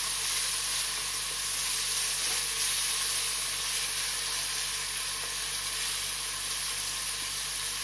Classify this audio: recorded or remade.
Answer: recorded